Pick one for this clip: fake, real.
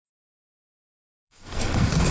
fake